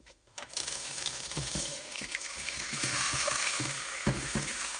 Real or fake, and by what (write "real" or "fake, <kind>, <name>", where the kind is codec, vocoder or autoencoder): fake, autoencoder, DAC-VAE